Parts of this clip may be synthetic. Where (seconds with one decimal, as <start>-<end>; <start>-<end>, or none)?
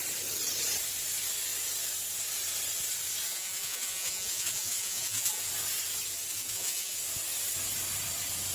3.3-5.4; 6.3-7.0